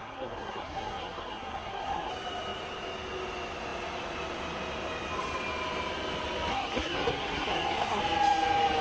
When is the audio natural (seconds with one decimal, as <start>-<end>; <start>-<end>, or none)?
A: 2.1-6.5; 8.0-8.8